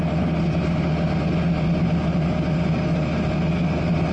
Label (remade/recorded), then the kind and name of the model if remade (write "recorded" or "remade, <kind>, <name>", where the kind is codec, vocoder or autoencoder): recorded